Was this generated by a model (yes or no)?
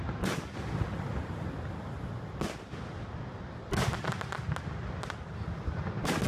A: no